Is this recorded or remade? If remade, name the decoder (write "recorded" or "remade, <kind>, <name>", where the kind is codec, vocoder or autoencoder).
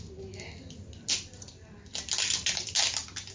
recorded